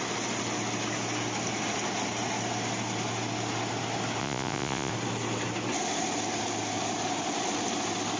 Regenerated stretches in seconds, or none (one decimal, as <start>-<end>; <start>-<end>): 4.2-4.9